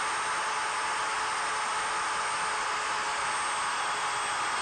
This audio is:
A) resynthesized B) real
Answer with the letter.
B